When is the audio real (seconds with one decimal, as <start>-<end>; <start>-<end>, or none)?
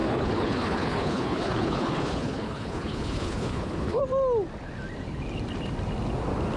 4.0-6.6